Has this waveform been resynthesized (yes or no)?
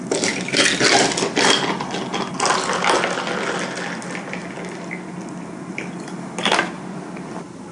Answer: no